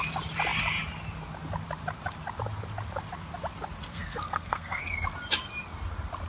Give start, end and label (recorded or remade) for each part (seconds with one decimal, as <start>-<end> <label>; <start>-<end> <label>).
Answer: 0.0-3.9 recorded; 3.9-4.8 remade; 4.8-6.3 recorded